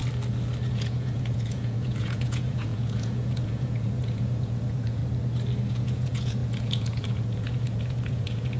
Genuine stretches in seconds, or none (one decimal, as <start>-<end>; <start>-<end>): 0.0-0.7; 5.0-5.7